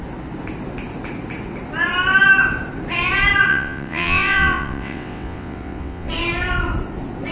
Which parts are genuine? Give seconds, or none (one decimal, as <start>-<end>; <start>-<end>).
0.0-3.5; 6.1-7.3